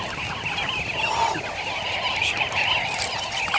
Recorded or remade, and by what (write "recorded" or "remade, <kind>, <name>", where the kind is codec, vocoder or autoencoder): recorded